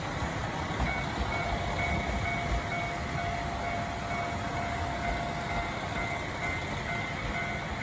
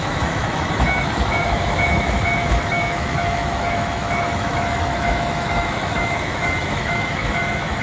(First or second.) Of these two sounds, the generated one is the second